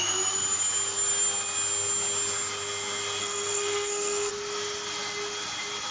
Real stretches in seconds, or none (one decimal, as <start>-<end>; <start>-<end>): 0.0-3.2; 4.3-5.9